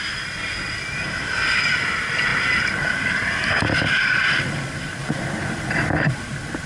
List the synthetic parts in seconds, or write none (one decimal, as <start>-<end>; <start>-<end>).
none